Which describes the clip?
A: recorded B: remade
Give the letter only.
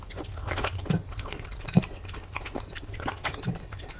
A